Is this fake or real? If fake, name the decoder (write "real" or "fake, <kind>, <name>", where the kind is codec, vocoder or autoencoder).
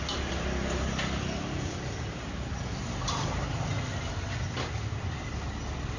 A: real